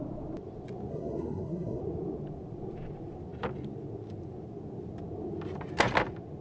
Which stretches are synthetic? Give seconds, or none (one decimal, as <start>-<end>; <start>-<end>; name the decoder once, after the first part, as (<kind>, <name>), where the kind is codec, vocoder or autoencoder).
0.9-1.8 (codec, SNAC)